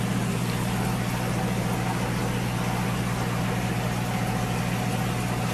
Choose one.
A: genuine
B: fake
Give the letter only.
A